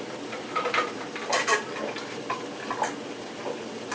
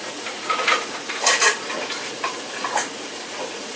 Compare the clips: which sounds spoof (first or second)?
second